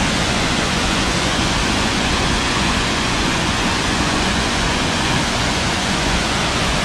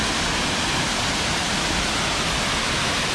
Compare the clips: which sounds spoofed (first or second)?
first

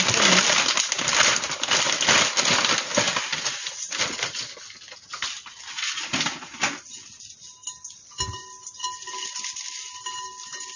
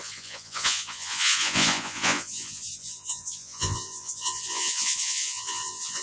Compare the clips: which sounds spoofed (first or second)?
second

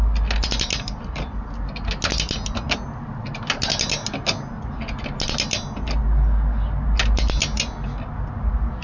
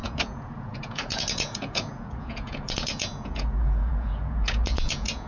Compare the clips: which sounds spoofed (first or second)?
second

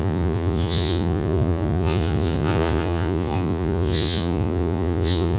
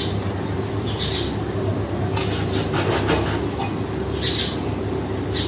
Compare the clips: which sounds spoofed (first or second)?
first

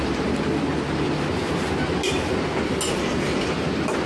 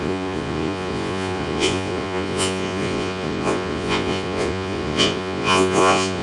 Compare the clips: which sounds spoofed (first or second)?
second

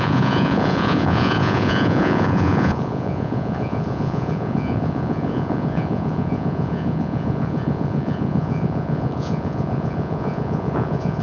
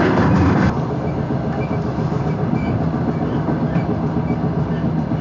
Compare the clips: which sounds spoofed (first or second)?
first